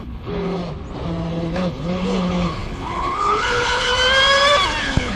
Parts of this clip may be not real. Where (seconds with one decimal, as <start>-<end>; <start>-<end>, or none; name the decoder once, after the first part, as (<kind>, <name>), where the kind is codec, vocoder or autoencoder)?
0.0-0.6 (codec, HILCodec); 1.3-3.9; 4.8-5.2